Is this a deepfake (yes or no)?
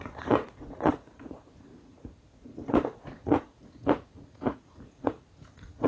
yes